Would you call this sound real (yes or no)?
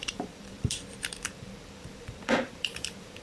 no